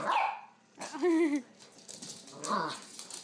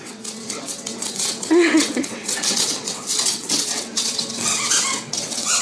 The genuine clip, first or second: first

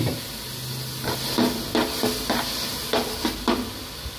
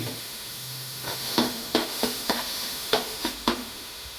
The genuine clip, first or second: first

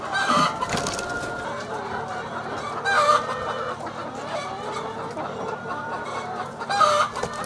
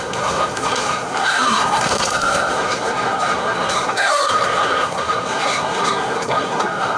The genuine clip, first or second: first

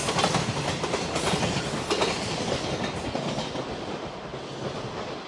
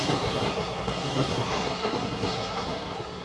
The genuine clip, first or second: first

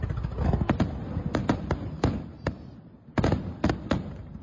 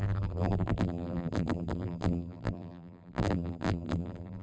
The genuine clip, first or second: first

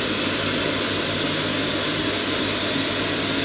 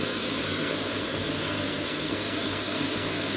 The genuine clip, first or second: first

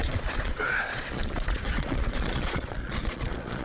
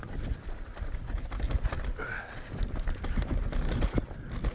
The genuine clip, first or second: second